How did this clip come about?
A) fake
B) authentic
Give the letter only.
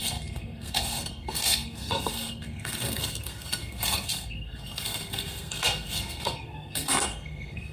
A